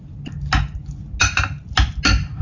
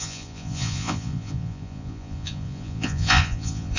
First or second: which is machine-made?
second